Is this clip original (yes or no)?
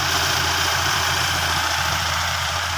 no